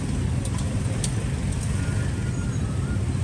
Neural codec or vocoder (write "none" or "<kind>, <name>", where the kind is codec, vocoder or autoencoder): none